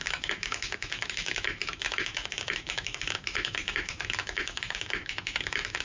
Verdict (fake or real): fake